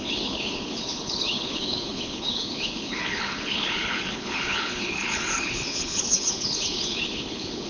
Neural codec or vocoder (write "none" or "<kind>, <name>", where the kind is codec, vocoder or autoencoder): codec, HILCodec